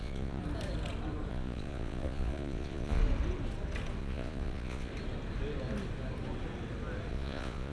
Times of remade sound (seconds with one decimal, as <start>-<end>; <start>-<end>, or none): 0.0-0.4; 1.3-3.0; 4.0-4.9; 7.1-7.7